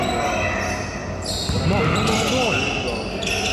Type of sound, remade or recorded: recorded